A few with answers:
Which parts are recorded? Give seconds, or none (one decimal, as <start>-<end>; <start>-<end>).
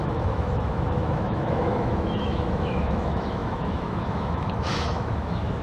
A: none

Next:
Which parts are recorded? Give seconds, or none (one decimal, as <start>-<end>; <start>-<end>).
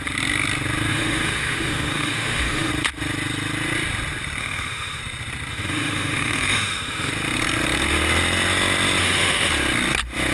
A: 0.0-0.9; 2.7-4.4; 5.0-5.5; 7.1-9.0; 9.5-10.3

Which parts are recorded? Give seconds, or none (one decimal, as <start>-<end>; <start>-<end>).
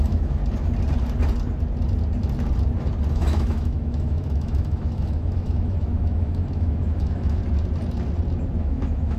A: 0.4-3.1; 7.4-8.6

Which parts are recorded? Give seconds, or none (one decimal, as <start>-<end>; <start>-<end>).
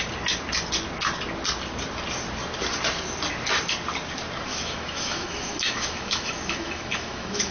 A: 0.0-4.5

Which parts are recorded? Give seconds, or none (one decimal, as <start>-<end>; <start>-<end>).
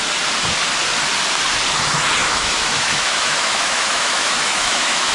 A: 0.0-2.2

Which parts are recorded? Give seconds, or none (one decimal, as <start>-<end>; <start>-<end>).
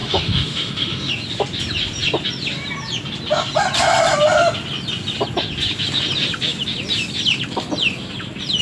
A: 1.1-8.6